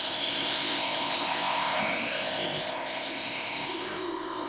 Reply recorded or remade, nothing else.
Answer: remade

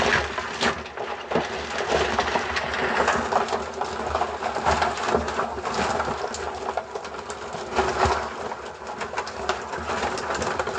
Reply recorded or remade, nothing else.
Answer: recorded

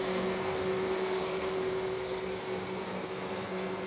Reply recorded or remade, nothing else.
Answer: remade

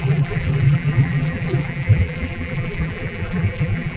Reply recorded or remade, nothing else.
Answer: remade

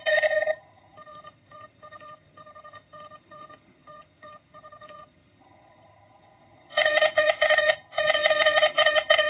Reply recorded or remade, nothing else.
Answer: remade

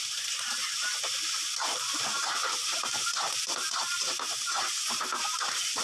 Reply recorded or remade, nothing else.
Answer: recorded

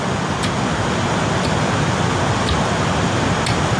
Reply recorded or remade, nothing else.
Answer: recorded